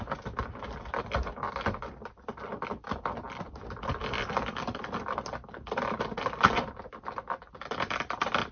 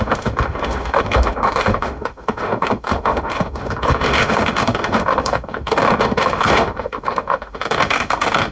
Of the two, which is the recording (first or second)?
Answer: first